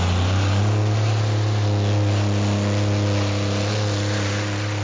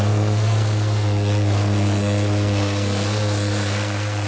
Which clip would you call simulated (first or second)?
second